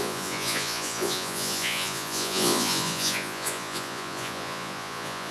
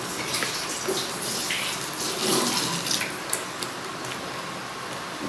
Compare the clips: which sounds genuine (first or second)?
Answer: second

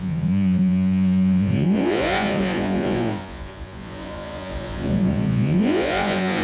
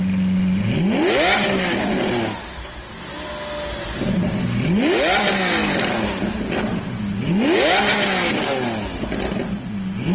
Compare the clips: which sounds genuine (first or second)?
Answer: second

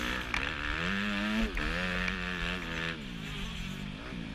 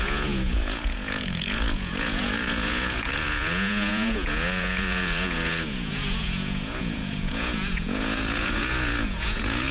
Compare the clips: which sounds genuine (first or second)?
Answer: first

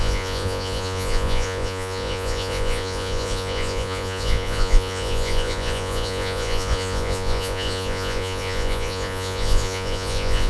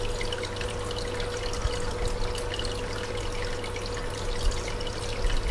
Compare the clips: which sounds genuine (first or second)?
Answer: second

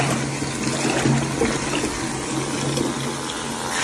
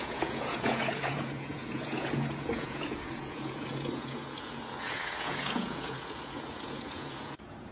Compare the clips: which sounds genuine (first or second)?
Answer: first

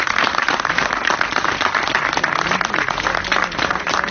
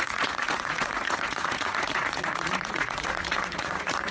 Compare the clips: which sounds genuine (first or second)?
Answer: first